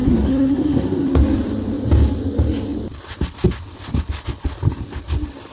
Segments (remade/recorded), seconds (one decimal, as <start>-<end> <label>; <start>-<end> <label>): 0.0-1.2 remade; 1.2-5.5 recorded